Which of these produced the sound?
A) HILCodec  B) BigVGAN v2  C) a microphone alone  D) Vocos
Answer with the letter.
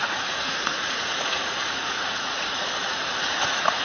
D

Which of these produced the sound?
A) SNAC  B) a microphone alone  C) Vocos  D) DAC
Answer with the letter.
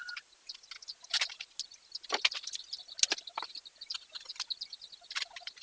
B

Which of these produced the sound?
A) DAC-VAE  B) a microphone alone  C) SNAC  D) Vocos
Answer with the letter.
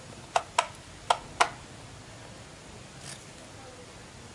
B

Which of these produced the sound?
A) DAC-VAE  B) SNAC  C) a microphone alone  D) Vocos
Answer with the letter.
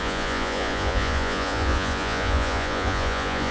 D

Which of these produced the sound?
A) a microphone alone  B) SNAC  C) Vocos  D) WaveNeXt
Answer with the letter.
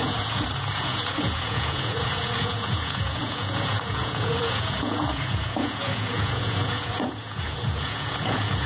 C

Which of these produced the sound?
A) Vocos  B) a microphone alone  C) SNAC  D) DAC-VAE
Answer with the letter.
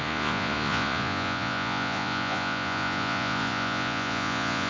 A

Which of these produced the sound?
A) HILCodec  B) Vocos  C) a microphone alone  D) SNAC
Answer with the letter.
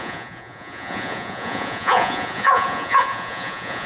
B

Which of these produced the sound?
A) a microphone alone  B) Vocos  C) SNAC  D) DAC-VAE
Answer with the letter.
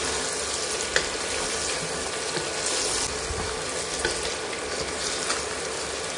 A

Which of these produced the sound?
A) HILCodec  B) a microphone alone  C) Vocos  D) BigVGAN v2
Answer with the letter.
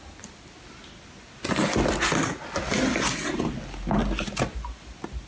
B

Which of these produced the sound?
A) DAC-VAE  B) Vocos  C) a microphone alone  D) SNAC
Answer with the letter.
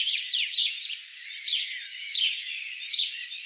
B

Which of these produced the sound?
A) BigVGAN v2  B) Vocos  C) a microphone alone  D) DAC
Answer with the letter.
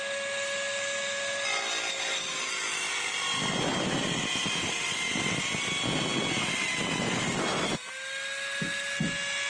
C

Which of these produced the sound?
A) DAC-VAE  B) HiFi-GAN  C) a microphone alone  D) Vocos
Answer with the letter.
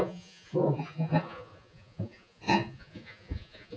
D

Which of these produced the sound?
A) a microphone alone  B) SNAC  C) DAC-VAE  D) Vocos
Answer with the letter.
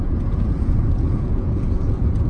D